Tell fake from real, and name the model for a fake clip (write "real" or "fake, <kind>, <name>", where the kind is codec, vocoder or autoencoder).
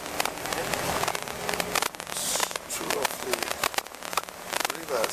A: real